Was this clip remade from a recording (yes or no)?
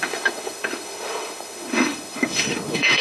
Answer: yes